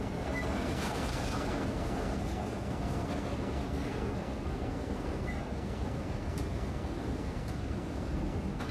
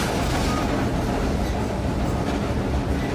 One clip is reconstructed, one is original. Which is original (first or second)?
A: second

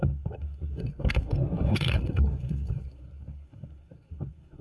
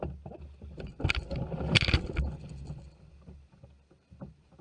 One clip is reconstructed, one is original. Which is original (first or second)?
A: second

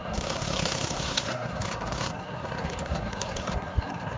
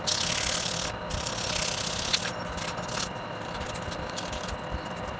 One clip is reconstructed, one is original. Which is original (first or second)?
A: second